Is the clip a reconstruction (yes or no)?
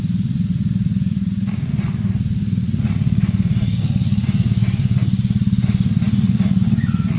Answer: yes